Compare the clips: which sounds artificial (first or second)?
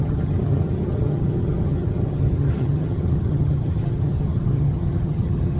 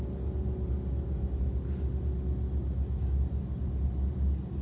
first